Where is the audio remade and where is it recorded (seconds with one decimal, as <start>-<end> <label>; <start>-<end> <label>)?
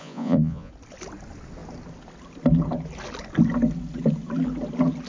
0.0-0.7 remade; 0.7-5.1 recorded